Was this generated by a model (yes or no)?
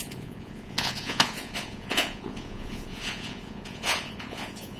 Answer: yes